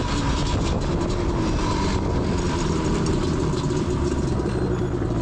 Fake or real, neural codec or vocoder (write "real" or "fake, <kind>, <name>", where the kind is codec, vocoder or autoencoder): fake, vocoder, BigVGAN v2